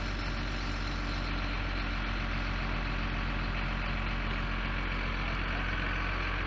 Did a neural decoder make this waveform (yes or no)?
no